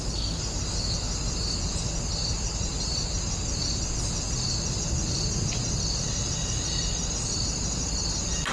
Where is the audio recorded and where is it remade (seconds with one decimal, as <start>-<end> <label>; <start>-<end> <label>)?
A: 0.0-8.5 recorded